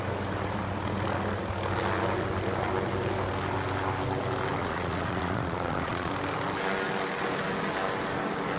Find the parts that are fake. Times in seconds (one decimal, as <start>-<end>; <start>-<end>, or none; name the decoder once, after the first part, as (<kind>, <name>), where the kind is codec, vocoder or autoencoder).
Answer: 4.6-6.1 (vocoder, Vocos)